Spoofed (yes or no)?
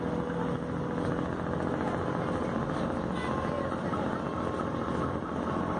no